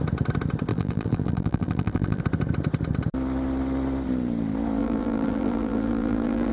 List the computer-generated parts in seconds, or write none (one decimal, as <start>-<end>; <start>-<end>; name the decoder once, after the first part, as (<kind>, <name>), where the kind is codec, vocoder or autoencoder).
0.7-2.2 (vocoder, BigVGAN v2); 4.8-6.5

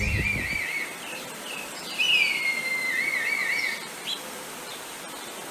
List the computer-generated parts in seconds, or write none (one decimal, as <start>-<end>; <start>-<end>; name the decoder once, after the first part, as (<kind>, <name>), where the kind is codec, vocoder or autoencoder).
0.5-2.6 (vocoder, BigVGAN v2); 3.4-5.1

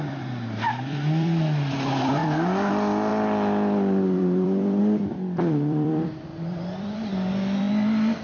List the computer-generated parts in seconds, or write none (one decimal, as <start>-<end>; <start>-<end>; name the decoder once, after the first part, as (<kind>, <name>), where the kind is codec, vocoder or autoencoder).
0.0-8.2 (vocoder, BigVGAN v2)

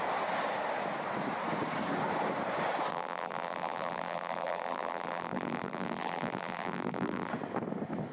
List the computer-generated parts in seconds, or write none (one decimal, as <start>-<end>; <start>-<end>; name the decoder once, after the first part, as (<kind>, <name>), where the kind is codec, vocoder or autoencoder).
2.9-7.3 (vocoder, BigVGAN v2)

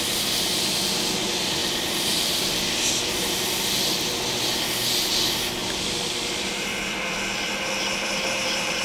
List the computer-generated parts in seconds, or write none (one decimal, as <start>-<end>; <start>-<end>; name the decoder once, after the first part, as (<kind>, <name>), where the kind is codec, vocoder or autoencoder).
1.6-4.7 (vocoder, BigVGAN v2); 5.6-7.5

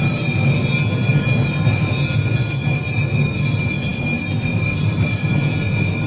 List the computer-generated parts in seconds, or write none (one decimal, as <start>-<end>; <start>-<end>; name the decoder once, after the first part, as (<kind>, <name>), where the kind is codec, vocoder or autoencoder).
3.9-5.1 (vocoder, BigVGAN v2)

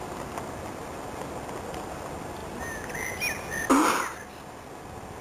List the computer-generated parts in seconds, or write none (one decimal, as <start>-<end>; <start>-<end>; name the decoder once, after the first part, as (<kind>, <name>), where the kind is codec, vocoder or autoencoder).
none

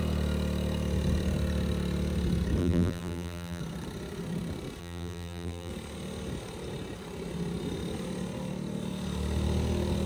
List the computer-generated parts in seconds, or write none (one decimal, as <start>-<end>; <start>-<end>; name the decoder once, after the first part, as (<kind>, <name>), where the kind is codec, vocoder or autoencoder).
2.6-3.6 (vocoder, BigVGAN v2); 4.8-5.7